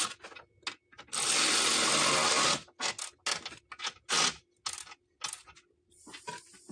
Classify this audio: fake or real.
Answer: real